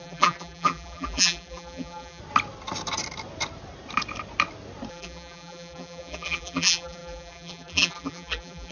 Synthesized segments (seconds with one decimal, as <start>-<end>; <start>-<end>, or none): 0.0-2.2; 4.9-8.7